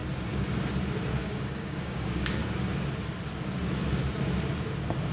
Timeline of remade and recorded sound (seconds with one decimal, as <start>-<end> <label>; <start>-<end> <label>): 0.0-1.2 recorded; 1.2-2.4 remade; 2.4-5.1 recorded